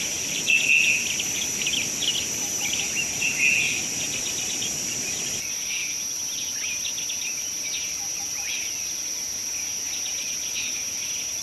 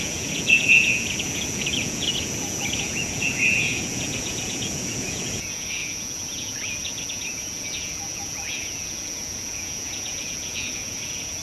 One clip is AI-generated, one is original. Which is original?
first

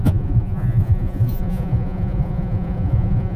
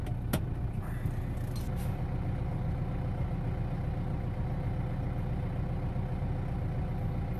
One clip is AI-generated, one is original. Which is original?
second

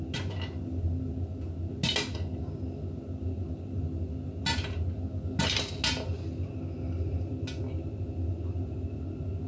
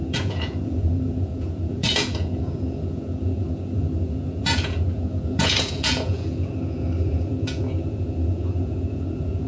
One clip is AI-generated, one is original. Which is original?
first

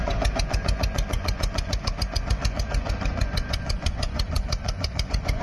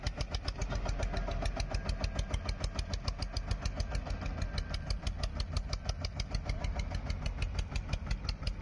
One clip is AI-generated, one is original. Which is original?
second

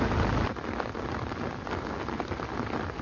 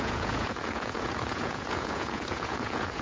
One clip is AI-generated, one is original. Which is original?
first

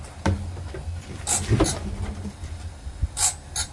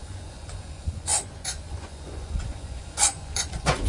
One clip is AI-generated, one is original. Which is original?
first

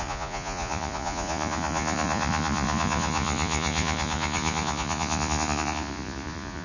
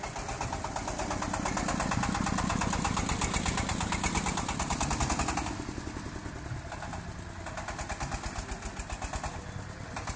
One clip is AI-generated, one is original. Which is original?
second